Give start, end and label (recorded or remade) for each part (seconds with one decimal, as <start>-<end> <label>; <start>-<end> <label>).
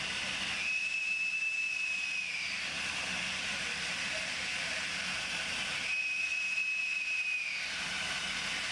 0.0-8.7 recorded